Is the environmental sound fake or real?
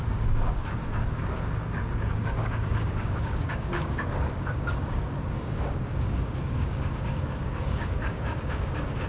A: fake